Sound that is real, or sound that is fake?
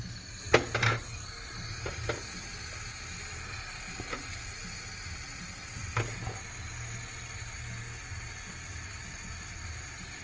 real